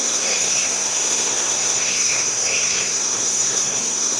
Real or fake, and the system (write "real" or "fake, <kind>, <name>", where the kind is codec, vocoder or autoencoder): fake, codec, SNAC